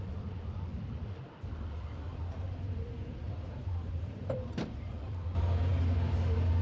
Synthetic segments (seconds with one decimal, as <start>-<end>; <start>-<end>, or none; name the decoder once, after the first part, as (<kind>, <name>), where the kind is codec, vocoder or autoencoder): 2.1-4.9 (vocoder, BigVGAN v2)